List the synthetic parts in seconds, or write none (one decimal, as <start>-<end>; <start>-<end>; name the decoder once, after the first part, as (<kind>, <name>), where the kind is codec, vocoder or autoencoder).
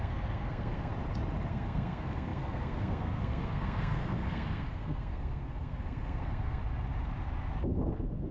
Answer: 0.0-0.9 (codec, SNAC); 1.5-6.6; 7.6-8.3